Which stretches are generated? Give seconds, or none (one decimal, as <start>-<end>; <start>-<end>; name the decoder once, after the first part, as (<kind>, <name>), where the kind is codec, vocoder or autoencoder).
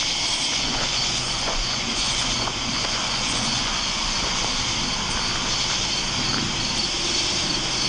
0.5-4.4 (vocoder, Vocos)